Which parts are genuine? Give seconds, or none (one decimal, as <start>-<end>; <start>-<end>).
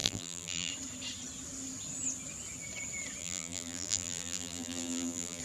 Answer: 0.7-3.2